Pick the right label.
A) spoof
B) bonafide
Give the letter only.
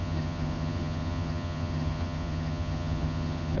A